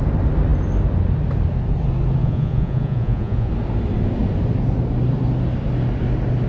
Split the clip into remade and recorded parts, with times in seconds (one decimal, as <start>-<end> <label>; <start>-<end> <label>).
0.0-2.2 recorded; 2.2-3.5 remade; 3.5-6.5 recorded